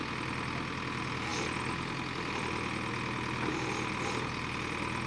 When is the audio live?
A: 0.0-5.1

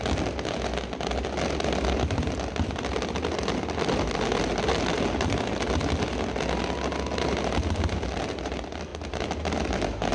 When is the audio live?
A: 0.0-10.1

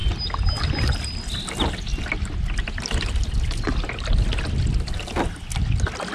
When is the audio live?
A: 0.0-6.1

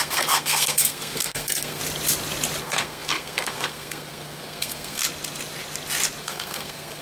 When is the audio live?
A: 1.8-2.6; 5.0-6.2